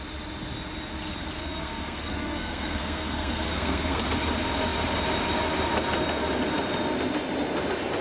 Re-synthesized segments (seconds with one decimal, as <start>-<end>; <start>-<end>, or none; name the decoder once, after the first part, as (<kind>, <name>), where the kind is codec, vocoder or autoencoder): 1.4-4.0 (codec, SNAC)